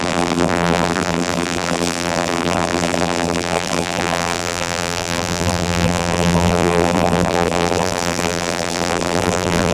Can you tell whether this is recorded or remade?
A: remade